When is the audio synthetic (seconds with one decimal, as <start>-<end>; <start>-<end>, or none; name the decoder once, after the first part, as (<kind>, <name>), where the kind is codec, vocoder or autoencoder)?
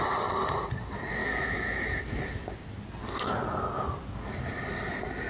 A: 1.2-2.0 (autoencoder, DAC-VAE)